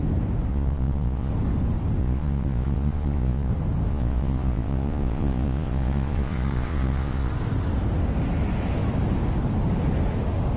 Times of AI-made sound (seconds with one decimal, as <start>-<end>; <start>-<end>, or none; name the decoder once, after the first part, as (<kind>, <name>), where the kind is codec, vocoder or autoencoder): 0.5-1.3 (vocoder, Vocos); 2.0-3.5; 3.9-7.3